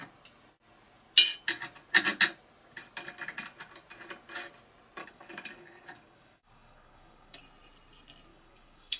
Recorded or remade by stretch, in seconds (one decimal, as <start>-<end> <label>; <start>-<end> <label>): 0.0-5.0 recorded; 5.0-7.4 remade; 7.4-8.3 recorded; 8.3-9.0 remade